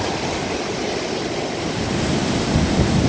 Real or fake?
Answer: real